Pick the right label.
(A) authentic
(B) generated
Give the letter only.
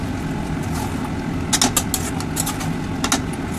A